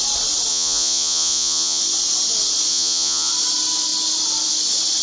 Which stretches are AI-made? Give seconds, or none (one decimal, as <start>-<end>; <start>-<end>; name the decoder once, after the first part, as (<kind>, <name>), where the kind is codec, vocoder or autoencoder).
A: 0.5-1.8 (vocoder, Vocos); 2.7-3.3